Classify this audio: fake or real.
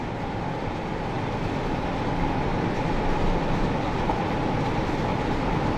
real